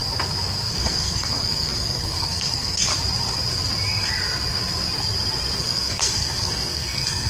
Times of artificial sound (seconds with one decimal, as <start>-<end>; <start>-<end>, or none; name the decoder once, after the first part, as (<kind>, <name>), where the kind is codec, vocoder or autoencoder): 0.7-2.9 (codec, SNAC); 5.6-7.3